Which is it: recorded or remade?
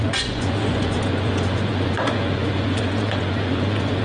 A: remade